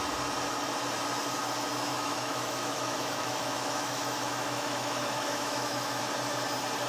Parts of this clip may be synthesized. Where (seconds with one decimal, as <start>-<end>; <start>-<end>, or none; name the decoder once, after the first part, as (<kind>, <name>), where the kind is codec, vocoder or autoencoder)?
1.9-6.0 (autoencoder, DAC-VAE)